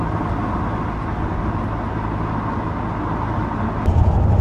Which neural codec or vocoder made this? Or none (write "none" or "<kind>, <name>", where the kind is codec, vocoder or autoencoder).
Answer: none